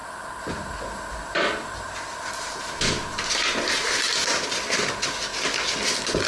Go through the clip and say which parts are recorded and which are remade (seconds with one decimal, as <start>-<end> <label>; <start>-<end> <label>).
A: 0.0-6.3 recorded

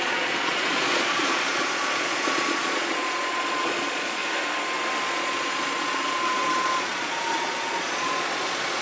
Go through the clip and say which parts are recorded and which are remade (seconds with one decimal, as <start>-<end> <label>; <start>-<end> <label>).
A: 0.0-4.2 remade; 4.2-5.0 recorded; 5.0-8.8 remade

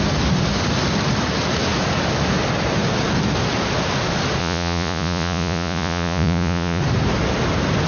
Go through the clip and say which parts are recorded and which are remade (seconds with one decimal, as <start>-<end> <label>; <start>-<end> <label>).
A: 0.0-4.4 recorded; 4.4-6.8 remade; 6.8-7.9 recorded

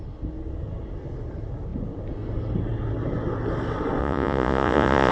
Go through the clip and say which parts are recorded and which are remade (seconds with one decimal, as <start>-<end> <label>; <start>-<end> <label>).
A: 0.0-4.0 recorded; 4.0-5.1 remade

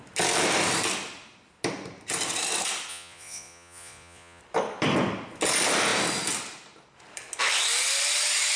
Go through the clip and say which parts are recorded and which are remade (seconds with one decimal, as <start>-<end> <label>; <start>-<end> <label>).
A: 0.0-2.9 recorded; 2.9-4.4 remade; 4.4-8.6 recorded